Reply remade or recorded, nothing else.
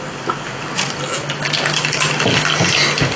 recorded